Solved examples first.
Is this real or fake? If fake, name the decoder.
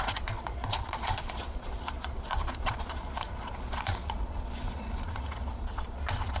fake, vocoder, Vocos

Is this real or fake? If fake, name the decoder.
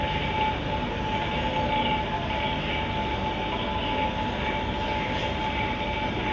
real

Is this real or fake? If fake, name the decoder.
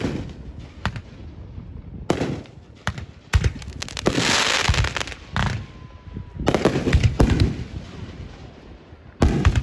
real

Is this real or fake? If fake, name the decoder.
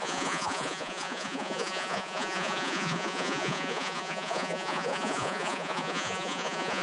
fake, vocoder, Vocos